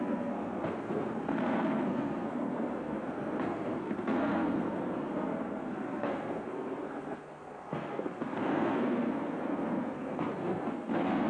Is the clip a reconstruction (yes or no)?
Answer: yes